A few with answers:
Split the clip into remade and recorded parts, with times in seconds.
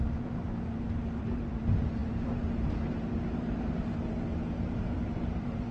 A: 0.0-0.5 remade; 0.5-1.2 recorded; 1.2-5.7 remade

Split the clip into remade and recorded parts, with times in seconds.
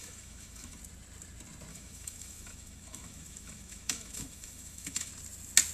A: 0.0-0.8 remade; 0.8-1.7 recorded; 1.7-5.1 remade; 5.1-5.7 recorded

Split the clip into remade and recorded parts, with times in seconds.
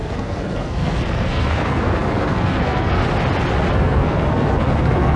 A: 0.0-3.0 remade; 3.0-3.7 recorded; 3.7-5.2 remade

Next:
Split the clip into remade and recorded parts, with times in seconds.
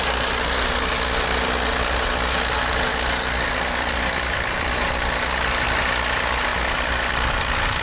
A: 0.0-2.9 recorded; 2.9-5.3 remade; 5.3-6.5 recorded; 6.5-7.1 remade; 7.1-7.8 recorded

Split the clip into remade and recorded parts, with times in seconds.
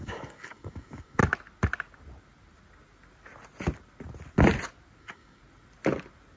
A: 0.0-1.2 remade; 1.2-5.0 recorded; 5.0-5.4 remade; 5.4-6.4 recorded